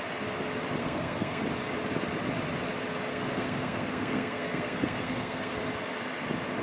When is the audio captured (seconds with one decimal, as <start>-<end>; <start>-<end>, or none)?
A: 0.0-0.8; 1.4-3.1; 5.5-6.6